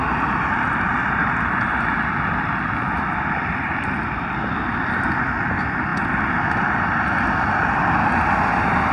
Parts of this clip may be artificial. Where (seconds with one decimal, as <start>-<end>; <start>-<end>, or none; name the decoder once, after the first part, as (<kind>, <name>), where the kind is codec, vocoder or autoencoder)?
none

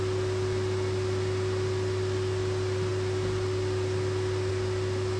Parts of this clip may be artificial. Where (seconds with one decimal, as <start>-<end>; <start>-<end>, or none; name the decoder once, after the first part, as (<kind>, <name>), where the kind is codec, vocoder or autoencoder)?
none

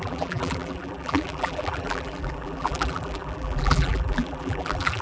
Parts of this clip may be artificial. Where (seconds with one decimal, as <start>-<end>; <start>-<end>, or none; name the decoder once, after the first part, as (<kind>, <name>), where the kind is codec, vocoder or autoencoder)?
0.0-5.0 (vocoder, BigVGAN v2)

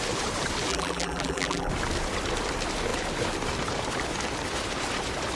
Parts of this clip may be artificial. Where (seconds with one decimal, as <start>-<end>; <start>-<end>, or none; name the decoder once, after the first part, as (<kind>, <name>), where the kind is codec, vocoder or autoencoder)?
0.7-1.7 (vocoder, BigVGAN v2)

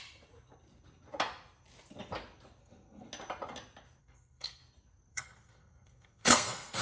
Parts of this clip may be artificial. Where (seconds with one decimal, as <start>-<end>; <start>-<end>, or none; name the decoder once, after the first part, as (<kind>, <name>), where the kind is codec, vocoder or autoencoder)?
2.6-3.1 (codec, SNAC); 4.0-4.6; 5.1-6.8

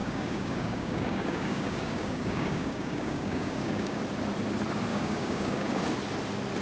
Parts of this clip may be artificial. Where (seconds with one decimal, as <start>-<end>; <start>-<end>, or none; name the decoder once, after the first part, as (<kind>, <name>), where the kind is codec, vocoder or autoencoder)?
0.0-4.0 (codec, DAC); 4.9-5.8

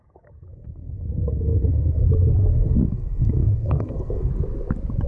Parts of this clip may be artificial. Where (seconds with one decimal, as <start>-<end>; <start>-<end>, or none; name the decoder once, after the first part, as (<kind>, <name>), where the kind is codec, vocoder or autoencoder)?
0.5-2.1 (codec, SNAC); 2.5-4.3